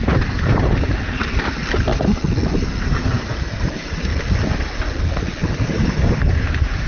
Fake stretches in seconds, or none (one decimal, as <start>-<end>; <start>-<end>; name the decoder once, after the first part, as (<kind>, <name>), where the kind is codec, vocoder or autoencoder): 0.0-1.2 (vocoder, BigVGAN v2); 2.7-4.1; 5.5-6.9